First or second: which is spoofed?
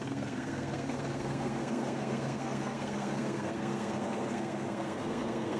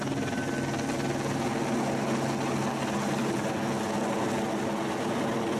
first